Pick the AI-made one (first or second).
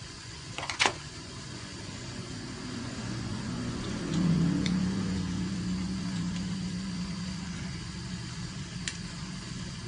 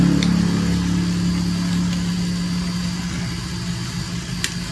first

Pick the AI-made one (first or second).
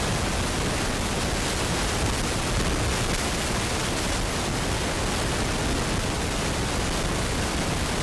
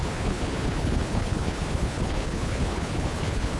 second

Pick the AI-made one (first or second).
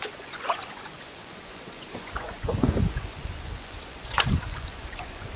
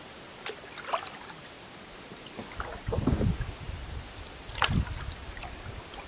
first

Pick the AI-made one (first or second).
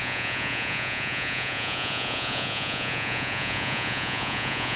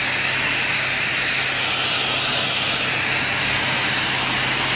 first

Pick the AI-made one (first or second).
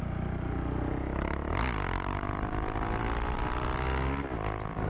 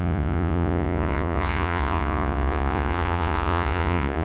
second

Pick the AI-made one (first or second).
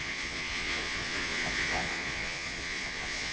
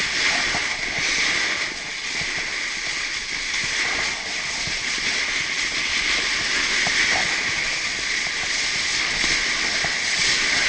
first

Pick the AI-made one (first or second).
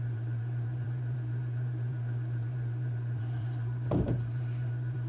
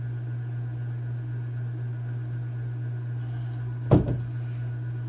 first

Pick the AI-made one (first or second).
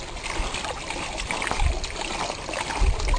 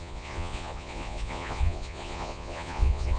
second